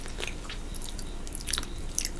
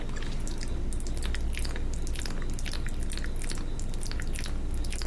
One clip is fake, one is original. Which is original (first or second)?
second